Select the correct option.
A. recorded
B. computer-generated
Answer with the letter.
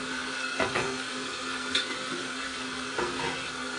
B